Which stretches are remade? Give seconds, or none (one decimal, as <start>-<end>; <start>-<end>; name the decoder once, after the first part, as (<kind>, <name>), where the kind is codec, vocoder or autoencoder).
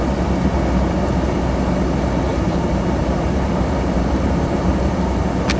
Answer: 2.3-4.8 (vocoder, BigVGAN v2)